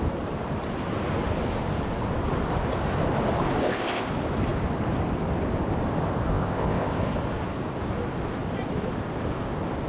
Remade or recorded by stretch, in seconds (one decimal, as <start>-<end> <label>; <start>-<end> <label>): 0.0-3.6 recorded; 3.6-4.1 remade; 4.1-6.3 recorded; 6.3-7.0 remade; 7.0-9.9 recorded